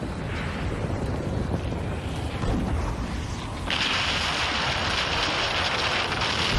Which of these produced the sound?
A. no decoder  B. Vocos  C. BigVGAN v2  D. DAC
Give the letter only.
A